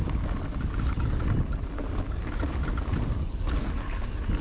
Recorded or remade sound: recorded